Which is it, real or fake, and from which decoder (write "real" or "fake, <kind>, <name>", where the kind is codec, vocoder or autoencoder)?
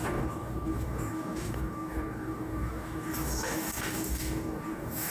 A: fake, codec, DAC